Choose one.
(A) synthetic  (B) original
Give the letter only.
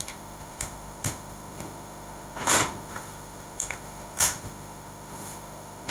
A